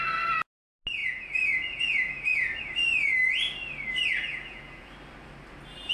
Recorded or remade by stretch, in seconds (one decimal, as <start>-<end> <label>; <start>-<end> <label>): 0.0-1.0 recorded; 1.0-2.6 remade; 2.6-4.2 recorded; 4.2-4.9 remade; 4.9-5.9 recorded